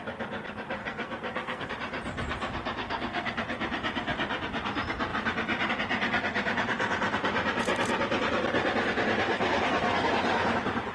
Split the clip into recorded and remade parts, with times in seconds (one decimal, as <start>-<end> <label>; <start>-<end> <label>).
0.0-0.8 recorded; 0.8-1.7 remade; 1.7-2.8 recorded; 2.8-3.4 remade; 3.4-9.3 recorded; 9.3-10.1 remade; 10.1-10.9 recorded

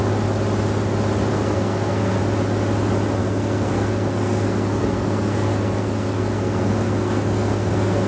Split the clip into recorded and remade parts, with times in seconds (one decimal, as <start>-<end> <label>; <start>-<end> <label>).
0.0-1.3 recorded; 1.3-2.2 remade; 2.2-3.2 recorded; 3.2-8.1 remade

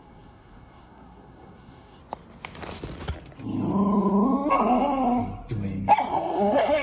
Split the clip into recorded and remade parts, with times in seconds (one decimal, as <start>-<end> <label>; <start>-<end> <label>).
0.0-2.0 remade; 2.0-6.1 recorded; 6.1-6.8 remade

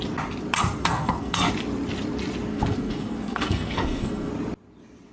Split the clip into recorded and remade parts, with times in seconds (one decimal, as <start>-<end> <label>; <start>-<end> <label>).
0.0-0.8 recorded; 0.8-1.5 remade; 1.5-2.5 recorded; 2.5-4.3 remade; 4.3-5.1 recorded

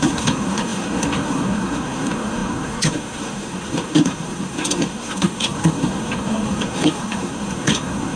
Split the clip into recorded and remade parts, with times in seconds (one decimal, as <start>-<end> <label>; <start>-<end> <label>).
0.0-8.2 remade